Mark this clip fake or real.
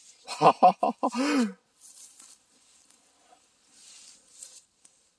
real